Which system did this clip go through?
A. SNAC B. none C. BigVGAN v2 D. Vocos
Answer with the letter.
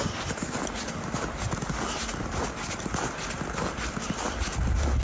B